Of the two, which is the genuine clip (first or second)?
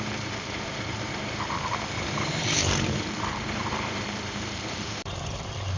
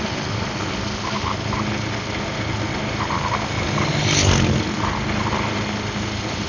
second